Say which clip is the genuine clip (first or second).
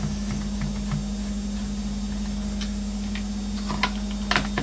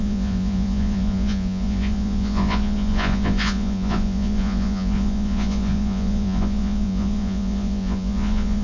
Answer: first